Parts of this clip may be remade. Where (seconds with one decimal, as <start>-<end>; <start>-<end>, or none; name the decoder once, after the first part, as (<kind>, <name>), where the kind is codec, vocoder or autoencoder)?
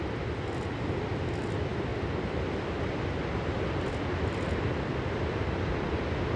none